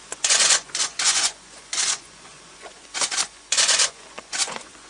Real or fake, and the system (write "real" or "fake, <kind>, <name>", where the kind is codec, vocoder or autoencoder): fake, vocoder, Vocos